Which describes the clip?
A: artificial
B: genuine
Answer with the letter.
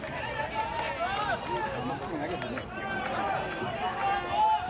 B